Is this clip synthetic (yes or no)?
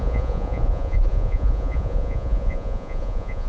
yes